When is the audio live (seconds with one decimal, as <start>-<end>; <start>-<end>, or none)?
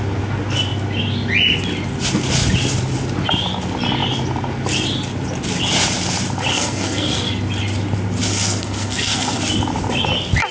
0.0-6.5; 7.3-8.3; 9.4-10.5